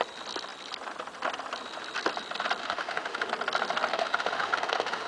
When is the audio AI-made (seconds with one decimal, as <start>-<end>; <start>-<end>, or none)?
2.6-3.3; 3.9-5.1